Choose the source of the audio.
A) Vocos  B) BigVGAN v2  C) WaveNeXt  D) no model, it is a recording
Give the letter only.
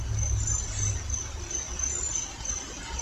D